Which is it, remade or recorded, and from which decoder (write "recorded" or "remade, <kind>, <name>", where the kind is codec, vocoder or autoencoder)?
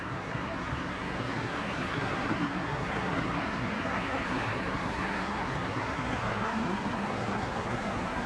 remade, codec, SNAC